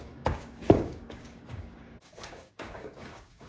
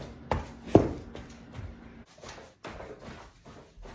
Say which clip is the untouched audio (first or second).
second